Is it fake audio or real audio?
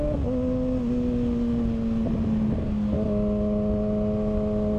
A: real